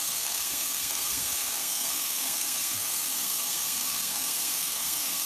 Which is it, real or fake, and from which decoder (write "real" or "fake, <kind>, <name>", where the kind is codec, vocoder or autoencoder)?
fake, codec, SNAC